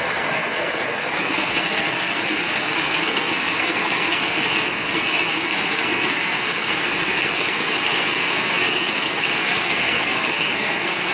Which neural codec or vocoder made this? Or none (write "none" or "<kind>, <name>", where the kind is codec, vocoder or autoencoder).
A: codec, SNAC